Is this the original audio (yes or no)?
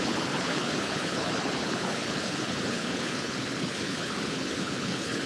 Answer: no